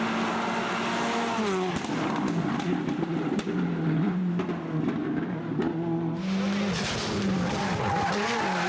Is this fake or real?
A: real